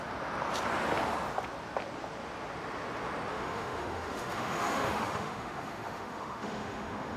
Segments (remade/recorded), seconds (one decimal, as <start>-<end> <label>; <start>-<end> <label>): 0.0-3.3 recorded; 3.3-7.2 remade